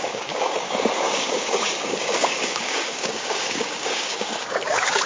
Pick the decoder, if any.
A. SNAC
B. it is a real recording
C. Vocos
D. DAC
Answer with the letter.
D